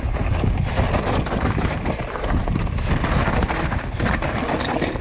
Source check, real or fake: real